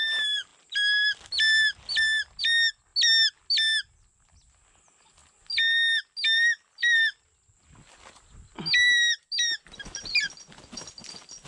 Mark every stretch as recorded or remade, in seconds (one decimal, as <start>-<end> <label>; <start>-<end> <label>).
0.0-11.5 recorded